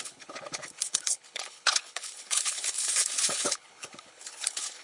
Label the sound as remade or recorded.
remade